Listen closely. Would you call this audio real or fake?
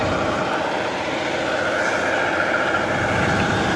real